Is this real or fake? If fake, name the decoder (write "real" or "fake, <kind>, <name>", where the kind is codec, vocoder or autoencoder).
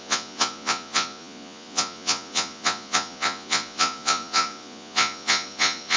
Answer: fake, vocoder, Vocos